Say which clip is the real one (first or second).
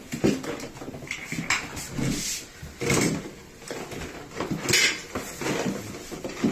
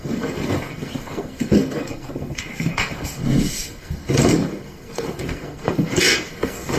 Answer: first